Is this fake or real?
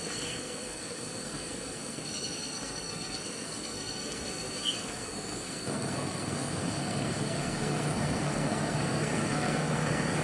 fake